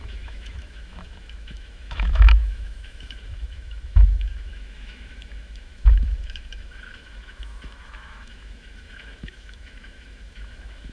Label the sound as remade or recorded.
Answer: remade